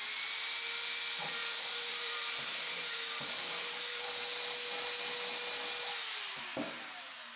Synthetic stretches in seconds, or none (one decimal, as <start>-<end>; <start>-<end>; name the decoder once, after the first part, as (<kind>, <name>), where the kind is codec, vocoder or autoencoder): 1.4-4.2 (vocoder, BigVGAN v2); 6.3-7.4